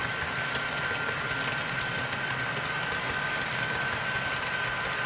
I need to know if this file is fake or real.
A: real